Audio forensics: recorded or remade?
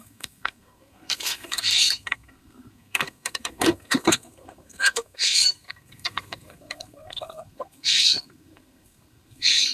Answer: remade